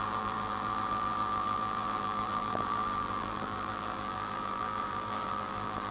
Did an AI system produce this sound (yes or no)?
yes